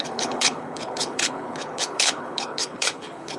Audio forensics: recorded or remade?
remade